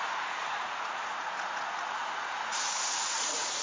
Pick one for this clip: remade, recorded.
remade